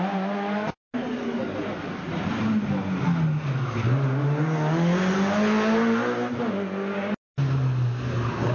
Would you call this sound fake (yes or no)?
no